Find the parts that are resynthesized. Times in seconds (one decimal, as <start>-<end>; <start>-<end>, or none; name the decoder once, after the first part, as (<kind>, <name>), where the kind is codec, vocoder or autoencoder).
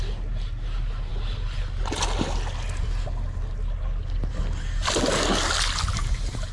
none